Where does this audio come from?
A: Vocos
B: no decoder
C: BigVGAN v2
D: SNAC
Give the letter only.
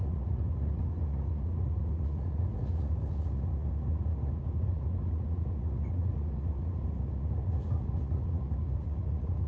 A